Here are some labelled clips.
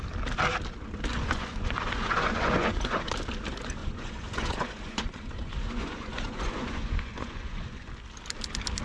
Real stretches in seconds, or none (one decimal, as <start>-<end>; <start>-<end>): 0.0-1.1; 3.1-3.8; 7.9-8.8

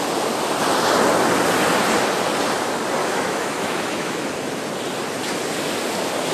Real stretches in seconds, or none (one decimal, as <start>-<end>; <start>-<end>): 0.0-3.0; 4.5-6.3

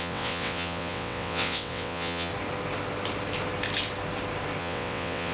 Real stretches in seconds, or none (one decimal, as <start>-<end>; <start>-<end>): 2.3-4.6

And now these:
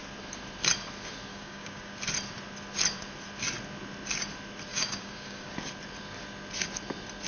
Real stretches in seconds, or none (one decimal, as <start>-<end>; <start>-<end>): 0.0-1.3; 1.9-4.7; 5.5-7.3

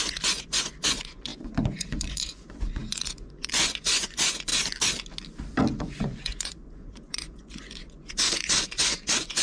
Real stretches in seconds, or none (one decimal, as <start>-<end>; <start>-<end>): 4.5-5.8